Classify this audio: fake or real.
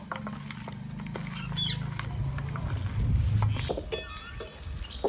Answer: real